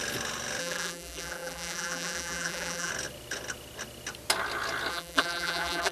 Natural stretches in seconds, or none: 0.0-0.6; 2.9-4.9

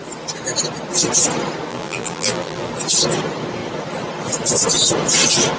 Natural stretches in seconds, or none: 0.0-1.7; 2.7-5.6